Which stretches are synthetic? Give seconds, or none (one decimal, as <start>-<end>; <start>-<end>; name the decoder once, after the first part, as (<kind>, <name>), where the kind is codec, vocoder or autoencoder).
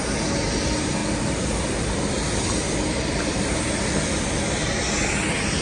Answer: 1.0-4.4 (vocoder, BigVGAN v2)